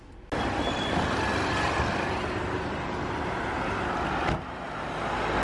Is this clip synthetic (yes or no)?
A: no